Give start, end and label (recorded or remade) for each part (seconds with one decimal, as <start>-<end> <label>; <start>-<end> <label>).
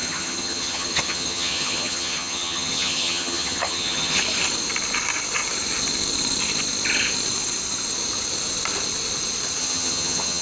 0.0-4.2 remade; 4.2-9.6 recorded; 9.6-10.4 remade